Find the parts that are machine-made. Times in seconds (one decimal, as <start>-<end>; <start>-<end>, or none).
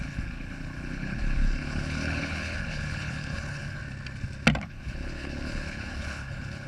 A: 0.0-3.8; 4.6-6.7